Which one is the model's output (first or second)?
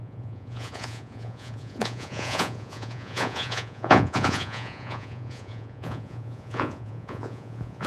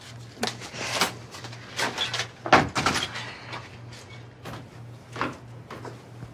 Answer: first